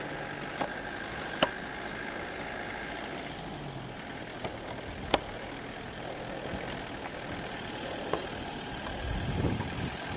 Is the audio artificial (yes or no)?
no